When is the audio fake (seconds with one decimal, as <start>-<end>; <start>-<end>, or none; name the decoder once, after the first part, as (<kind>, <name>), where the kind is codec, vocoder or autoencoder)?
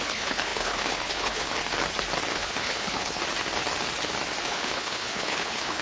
0.0-1.6 (codec, HILCodec); 2.3-3.2; 4.4-5.8